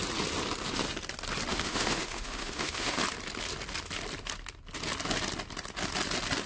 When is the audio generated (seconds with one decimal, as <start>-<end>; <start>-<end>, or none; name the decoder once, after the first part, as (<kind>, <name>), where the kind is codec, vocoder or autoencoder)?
1.5-3.0 (autoencoder, DAC-VAE)